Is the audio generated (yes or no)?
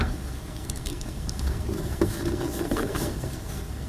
yes